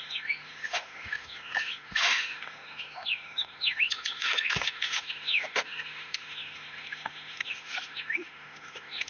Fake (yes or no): yes